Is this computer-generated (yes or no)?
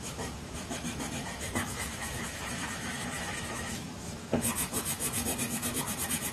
yes